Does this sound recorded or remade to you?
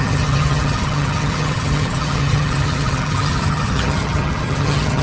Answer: remade